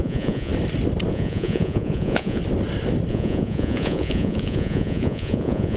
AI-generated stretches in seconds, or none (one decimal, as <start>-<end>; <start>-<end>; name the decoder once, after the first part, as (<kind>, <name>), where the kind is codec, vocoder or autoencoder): 0.0-0.5 (vocoder, Vocos); 1.1-2.4; 3.1-5.8